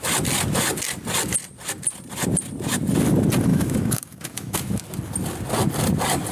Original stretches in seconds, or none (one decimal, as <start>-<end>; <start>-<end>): 0.0-3.5; 4.8-6.3